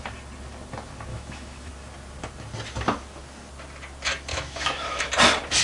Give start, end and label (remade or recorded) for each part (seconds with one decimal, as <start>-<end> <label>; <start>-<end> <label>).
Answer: 0.0-1.1 recorded; 1.1-1.7 remade; 1.7-4.3 recorded; 4.3-5.1 remade; 5.1-5.6 recorded